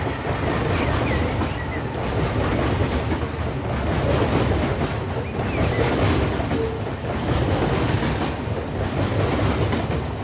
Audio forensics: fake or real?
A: real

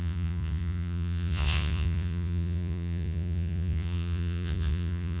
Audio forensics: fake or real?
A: fake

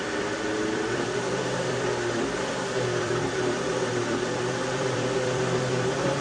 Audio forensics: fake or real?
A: fake